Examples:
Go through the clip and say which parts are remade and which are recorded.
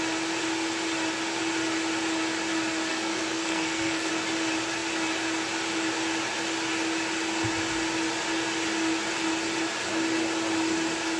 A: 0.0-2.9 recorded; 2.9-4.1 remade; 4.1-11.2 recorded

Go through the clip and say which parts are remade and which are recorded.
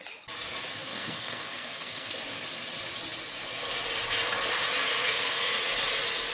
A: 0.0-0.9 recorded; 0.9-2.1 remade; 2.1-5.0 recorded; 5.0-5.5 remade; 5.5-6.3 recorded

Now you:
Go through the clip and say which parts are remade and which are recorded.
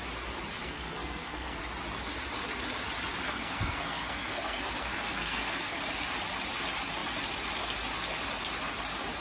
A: 0.0-0.6 recorded; 0.6-1.6 remade; 1.6-3.2 recorded; 3.2-5.8 remade; 5.8-9.2 recorded